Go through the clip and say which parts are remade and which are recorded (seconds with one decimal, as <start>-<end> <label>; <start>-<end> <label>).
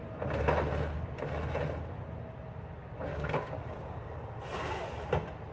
0.0-3.1 recorded; 3.1-4.0 remade; 4.0-5.5 recorded